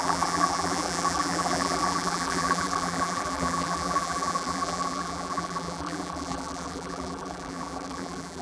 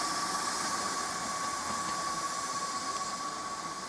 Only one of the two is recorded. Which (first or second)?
second